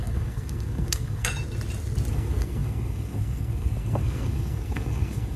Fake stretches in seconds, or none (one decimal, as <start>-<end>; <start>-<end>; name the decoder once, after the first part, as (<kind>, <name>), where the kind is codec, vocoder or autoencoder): 0.0-1.3 (codec, SNAC); 2.1-5.4